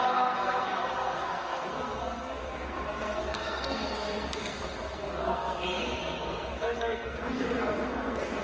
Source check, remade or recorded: remade